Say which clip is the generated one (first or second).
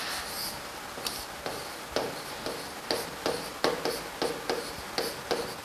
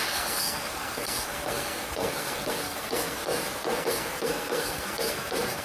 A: second